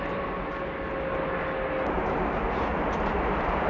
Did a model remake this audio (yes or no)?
no